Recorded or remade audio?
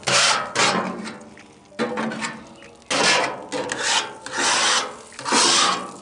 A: recorded